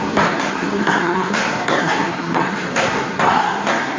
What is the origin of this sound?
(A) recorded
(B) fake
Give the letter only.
B